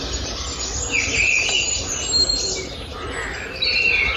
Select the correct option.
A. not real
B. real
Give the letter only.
B